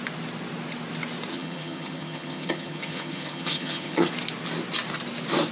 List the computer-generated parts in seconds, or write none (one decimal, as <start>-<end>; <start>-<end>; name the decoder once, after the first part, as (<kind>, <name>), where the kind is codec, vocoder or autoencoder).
1.3-4.1 (vocoder, HiFi-GAN)